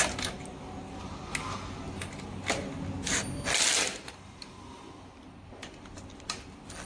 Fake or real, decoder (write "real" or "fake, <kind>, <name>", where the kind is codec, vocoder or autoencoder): real